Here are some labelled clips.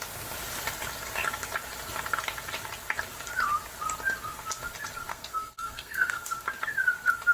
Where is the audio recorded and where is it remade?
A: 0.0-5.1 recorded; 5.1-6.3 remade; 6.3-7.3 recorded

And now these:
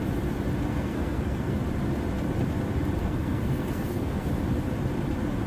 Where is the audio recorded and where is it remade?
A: 0.0-0.7 recorded; 0.7-1.6 remade; 1.6-3.0 recorded; 3.0-4.3 remade; 4.3-5.5 recorded

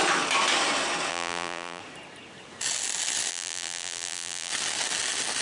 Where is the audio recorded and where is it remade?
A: 0.0-1.1 recorded; 1.1-1.8 remade; 1.8-3.3 recorded; 3.3-4.5 remade; 4.5-5.4 recorded

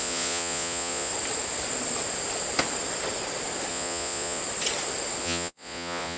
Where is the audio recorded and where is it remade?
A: 0.0-1.1 remade; 1.1-3.7 recorded; 3.7-4.4 remade; 4.4-5.2 recorded; 5.2-6.2 remade